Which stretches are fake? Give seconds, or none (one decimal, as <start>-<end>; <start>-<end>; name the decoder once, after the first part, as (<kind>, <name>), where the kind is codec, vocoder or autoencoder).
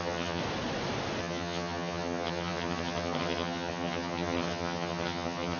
0.0-0.4 (vocoder, HiFi-GAN); 1.2-5.6